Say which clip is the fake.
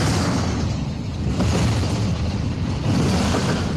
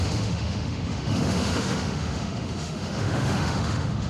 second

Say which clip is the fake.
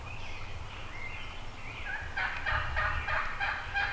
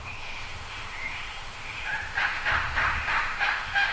second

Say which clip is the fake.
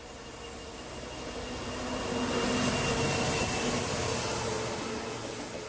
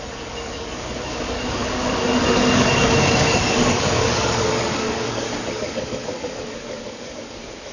second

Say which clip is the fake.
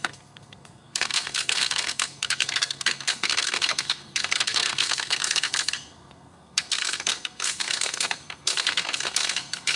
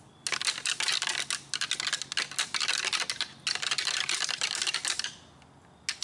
first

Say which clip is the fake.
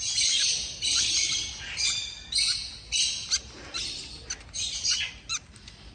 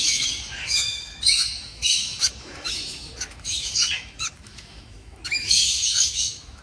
second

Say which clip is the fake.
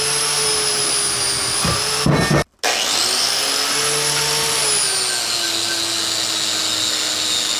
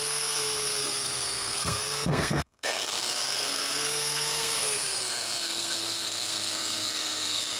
second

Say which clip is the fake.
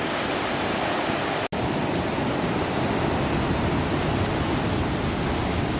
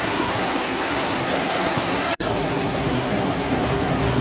second